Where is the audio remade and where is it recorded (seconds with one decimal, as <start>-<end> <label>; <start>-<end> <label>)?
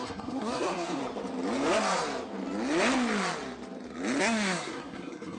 0.0-1.0 remade; 1.0-4.2 recorded; 4.2-5.4 remade